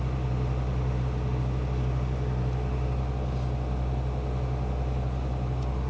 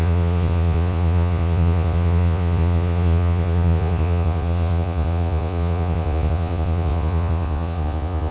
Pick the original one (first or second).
first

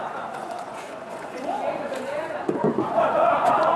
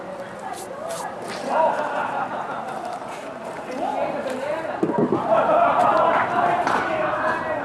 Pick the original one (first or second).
second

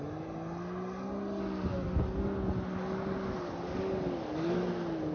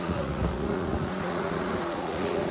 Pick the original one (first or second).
first